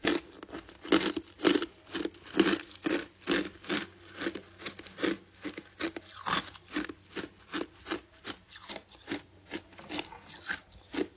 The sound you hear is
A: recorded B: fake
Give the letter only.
A